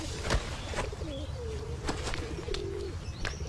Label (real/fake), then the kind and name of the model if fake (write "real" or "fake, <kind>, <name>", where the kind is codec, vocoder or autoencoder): real